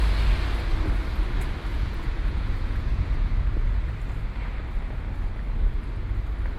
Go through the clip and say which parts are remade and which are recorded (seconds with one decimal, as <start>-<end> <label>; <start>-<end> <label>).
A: 0.0-1.7 recorded; 1.7-3.9 remade; 3.9-6.6 recorded